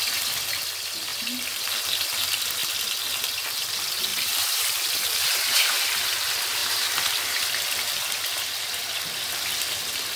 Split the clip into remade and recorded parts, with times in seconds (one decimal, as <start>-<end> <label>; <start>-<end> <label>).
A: 0.0-1.1 recorded; 1.1-1.6 remade; 1.6-4.1 recorded; 4.1-5.1 remade; 5.1-6.6 recorded; 6.6-8.8 remade; 8.8-10.2 recorded